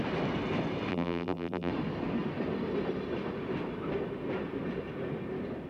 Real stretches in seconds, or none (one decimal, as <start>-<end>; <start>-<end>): 0.0-0.9; 1.7-5.7